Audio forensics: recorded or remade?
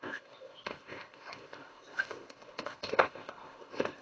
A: remade